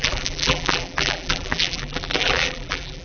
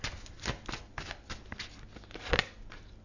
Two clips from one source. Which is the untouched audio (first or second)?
second